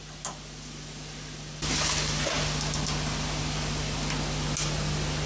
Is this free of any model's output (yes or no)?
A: yes